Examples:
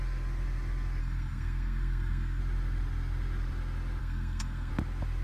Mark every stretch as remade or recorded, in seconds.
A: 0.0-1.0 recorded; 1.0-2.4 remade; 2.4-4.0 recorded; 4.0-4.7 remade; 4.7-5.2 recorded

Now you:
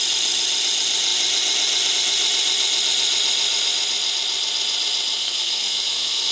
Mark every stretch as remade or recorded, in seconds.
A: 0.0-5.2 recorded; 5.2-6.3 remade

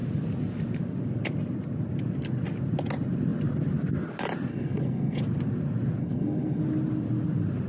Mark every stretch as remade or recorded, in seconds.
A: 0.0-4.5 recorded; 4.5-5.2 remade; 5.2-6.0 recorded; 6.0-6.6 remade; 6.6-7.7 recorded

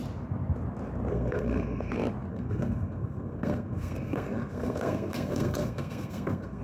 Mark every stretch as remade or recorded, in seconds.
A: 0.0-1.1 recorded; 1.1-1.9 remade; 1.9-2.3 recorded; 2.3-6.6 remade